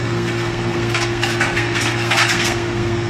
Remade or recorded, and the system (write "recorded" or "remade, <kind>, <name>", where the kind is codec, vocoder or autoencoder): remade, codec, SNAC